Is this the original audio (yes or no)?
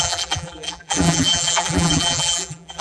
no